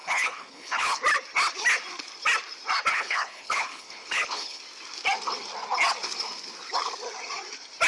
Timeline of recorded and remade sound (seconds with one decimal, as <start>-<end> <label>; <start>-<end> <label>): 0.0-1.0 remade; 1.0-2.9 recorded; 2.9-4.6 remade; 4.6-7.9 recorded